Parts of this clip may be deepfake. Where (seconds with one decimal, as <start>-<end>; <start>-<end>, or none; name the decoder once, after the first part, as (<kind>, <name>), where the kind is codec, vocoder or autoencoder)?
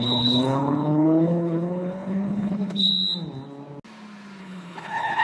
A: 0.0-2.9 (codec, HILCodec); 4.4-5.2